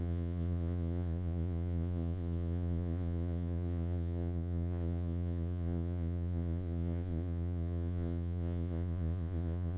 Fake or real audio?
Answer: fake